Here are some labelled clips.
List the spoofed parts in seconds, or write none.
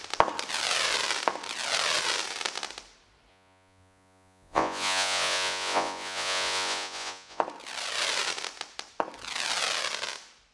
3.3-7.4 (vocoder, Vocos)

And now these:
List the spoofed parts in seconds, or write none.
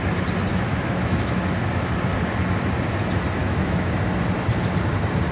0.5-1.4 (autoencoder, DAC-VAE); 3.4-3.9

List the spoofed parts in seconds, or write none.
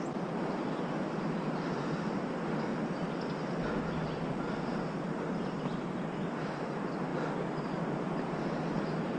none